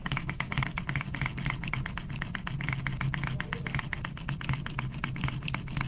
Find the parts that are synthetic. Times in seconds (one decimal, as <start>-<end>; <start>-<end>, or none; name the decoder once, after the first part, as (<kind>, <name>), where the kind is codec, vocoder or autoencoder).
0.0-0.5 (autoencoder, DAC-VAE)